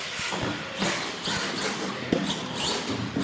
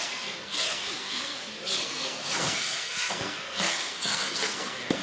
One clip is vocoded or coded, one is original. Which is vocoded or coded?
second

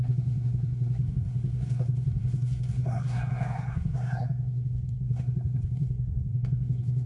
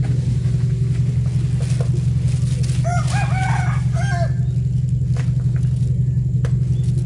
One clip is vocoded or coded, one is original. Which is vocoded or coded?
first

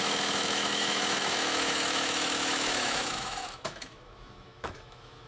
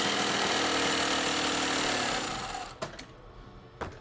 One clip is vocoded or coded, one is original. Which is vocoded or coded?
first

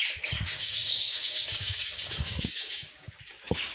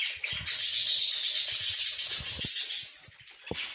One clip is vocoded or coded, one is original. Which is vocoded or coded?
first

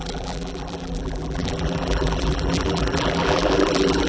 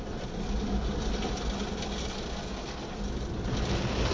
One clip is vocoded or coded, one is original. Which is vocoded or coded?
first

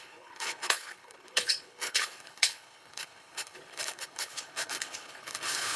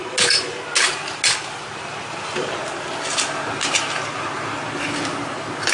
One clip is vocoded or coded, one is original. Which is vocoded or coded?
first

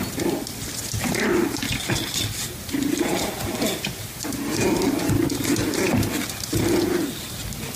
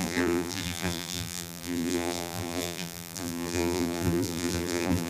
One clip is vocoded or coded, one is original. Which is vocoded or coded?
second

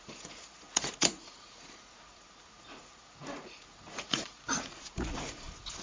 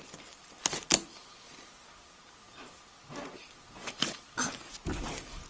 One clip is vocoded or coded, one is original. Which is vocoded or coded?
first